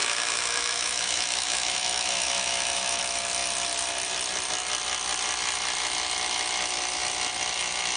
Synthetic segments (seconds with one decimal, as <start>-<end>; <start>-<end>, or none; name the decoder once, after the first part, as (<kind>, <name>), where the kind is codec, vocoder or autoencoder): 0.0-3.0 (autoencoder, DAC-VAE)

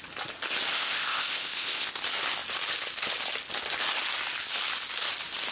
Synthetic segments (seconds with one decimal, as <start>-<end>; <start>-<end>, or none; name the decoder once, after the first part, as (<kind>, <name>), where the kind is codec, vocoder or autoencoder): 0.7-2.0 (codec, ZipCodec)

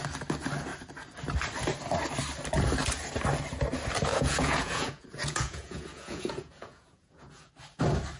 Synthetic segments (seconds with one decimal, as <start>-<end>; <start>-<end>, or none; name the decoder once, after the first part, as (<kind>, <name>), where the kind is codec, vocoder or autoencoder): 4.1-7.5 (vocoder, Vocos)